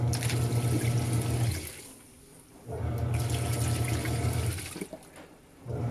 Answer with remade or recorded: recorded